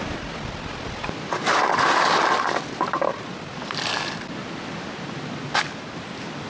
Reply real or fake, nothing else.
real